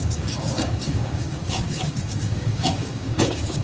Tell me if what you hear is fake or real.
fake